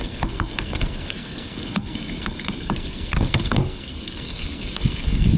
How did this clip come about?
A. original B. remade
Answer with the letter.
B